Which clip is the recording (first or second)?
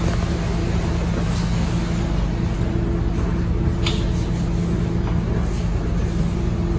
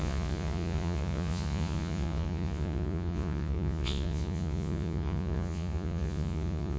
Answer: first